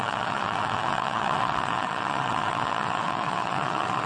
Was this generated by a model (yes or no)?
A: yes